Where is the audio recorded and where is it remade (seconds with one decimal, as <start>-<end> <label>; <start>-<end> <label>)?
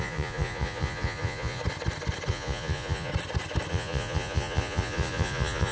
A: 0.0-1.6 remade; 1.6-2.3 recorded; 2.3-3.1 remade; 3.1-3.7 recorded; 3.7-5.7 remade